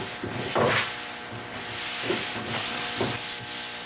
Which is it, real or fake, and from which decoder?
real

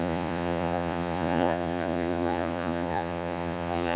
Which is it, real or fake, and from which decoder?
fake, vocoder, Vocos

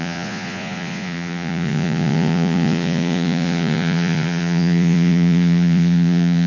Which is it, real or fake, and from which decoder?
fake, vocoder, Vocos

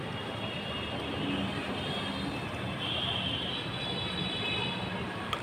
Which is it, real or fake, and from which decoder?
real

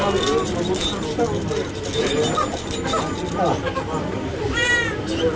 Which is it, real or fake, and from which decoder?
real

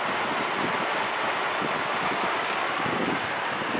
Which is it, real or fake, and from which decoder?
real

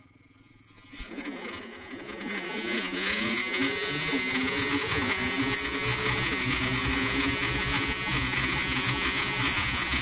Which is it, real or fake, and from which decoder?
fake, vocoder, Vocos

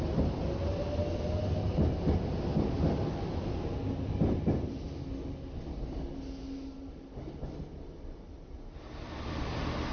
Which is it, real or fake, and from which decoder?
real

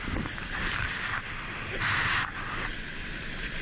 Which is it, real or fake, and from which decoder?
real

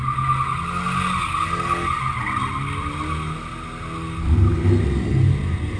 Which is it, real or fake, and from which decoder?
real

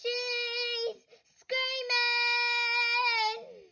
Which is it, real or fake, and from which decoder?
real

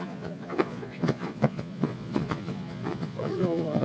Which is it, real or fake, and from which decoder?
fake, vocoder, Vocos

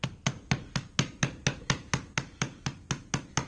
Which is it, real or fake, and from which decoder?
real